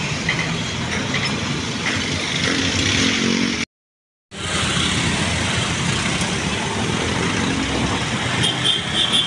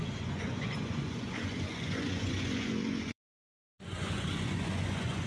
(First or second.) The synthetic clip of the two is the second